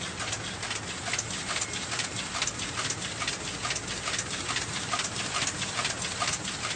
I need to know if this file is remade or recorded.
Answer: recorded